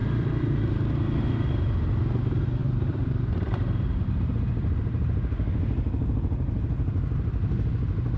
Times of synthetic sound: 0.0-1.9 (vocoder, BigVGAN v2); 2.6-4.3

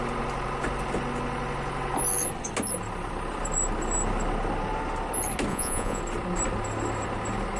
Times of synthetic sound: 5.5-6.0 (vocoder, Vocos)

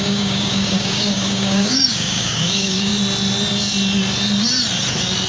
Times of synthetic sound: 0.0-2.9 (codec, DAC)